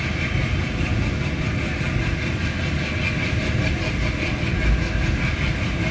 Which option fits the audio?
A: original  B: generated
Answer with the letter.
A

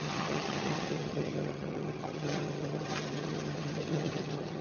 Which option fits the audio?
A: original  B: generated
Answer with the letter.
B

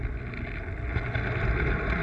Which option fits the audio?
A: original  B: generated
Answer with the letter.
A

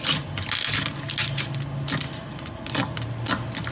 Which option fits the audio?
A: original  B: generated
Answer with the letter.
A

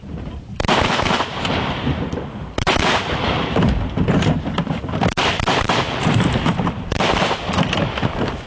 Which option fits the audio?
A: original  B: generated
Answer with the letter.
B